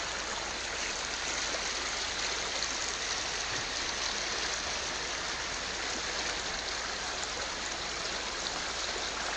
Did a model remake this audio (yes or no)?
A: no